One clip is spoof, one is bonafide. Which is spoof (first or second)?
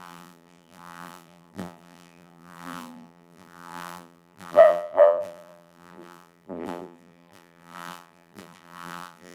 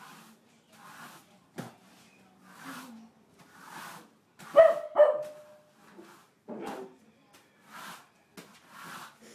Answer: first